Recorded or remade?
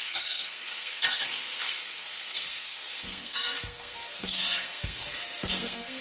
remade